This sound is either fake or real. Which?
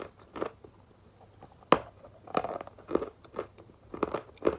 real